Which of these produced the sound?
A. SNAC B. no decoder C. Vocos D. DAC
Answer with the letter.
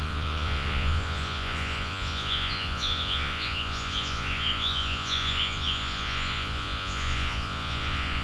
C